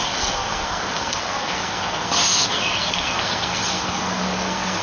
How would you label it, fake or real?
fake